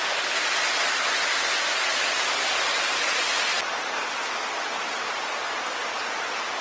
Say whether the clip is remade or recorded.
recorded